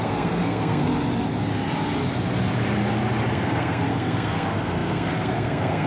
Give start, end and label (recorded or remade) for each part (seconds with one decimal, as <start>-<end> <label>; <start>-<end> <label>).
0.0-0.9 remade; 0.9-3.3 recorded; 3.3-5.9 remade